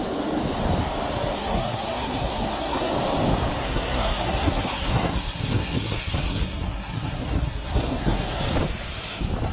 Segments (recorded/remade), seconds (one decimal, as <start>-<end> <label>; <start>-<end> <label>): 0.0-1.4 recorded; 1.4-2.9 remade; 2.9-3.6 recorded; 3.6-8.4 remade; 8.4-9.5 recorded